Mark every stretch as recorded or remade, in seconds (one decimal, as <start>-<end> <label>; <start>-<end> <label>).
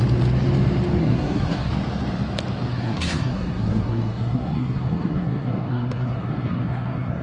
0.0-1.0 recorded; 1.0-1.7 remade; 1.7-2.7 recorded; 2.7-7.2 remade